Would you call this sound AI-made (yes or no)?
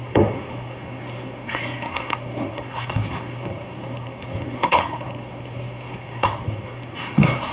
yes